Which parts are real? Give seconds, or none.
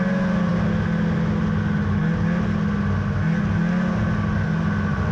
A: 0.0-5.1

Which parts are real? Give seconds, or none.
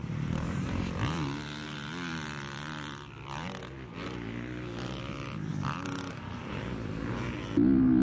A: 3.6-5.5; 7.1-8.0